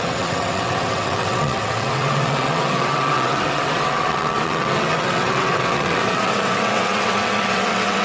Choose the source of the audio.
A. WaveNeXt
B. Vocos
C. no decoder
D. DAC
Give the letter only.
A